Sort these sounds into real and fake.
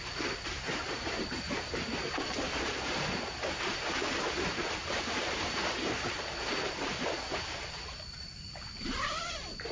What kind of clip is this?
fake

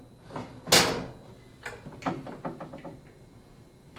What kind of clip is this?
real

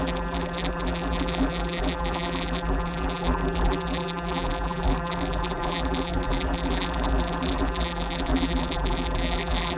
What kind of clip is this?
fake